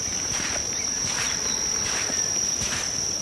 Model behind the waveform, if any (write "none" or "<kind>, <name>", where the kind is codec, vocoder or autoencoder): vocoder, BigVGAN v2